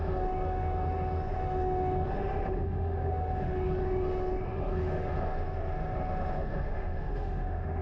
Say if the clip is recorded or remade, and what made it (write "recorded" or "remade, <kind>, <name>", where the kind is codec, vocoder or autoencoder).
remade, autoencoder, DAC-VAE